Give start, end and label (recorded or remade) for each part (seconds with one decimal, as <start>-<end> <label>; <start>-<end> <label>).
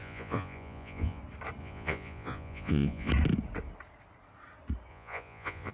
0.0-1.2 remade; 1.2-1.6 recorded; 1.6-3.1 remade; 3.1-4.9 recorded; 4.9-5.7 remade